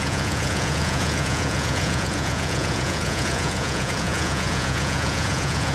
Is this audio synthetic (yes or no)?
yes